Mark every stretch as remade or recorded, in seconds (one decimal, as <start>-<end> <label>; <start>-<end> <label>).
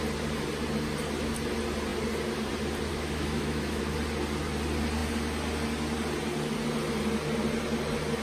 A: 0.0-2.9 recorded; 2.9-3.8 remade; 3.8-8.2 recorded